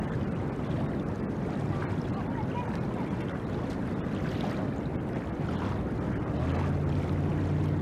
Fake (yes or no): no